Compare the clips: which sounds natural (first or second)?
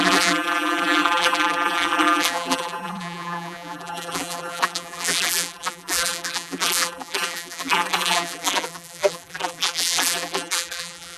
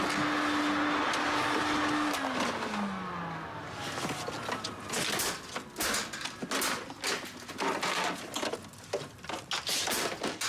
second